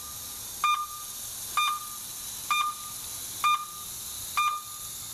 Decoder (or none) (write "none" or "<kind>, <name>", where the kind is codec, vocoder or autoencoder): none